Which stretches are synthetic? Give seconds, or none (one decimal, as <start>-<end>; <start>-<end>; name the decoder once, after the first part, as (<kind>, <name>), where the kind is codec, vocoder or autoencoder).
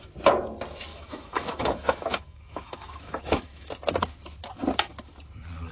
0.9-3.7 (autoencoder, DAC-VAE)